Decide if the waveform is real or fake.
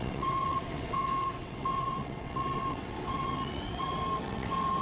fake